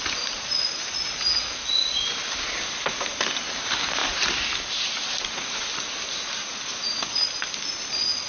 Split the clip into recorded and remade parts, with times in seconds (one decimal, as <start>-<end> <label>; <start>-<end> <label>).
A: 0.0-8.3 recorded